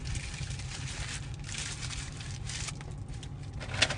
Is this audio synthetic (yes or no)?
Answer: no